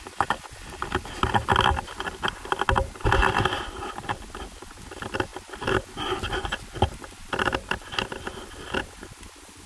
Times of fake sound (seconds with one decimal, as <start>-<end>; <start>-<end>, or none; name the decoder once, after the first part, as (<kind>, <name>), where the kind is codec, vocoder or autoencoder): none